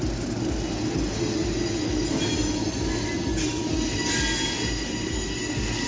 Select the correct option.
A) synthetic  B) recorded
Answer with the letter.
B